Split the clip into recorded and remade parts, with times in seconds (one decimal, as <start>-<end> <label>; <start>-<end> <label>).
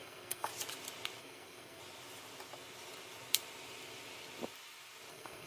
0.0-0.5 remade; 0.5-1.2 recorded; 1.2-1.8 remade; 1.8-5.1 recorded; 5.1-5.5 remade